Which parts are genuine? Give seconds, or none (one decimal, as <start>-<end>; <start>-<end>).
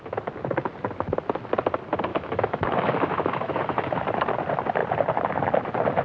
0.0-2.1; 4.0-6.0